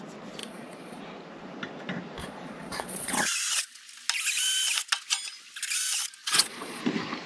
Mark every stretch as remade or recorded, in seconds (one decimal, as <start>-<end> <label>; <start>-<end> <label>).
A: 0.0-0.4 recorded; 0.4-1.0 remade; 1.0-2.2 recorded; 2.2-3.8 remade; 3.8-6.2 recorded; 6.2-6.8 remade; 6.8-7.3 recorded